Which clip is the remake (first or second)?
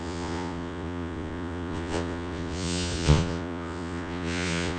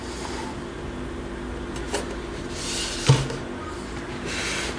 first